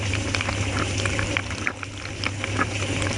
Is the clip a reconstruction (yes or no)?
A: no